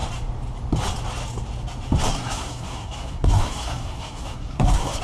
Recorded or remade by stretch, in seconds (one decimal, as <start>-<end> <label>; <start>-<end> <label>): 0.0-2.1 recorded; 2.1-5.0 remade